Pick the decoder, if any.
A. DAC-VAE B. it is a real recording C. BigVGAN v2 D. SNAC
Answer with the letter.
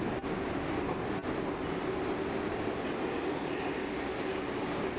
B